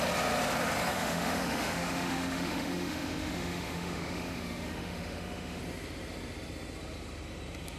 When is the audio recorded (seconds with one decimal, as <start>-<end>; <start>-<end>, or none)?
0.0-0.9; 5.6-7.8